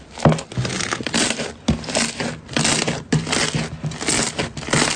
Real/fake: real